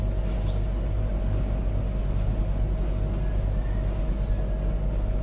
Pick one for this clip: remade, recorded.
recorded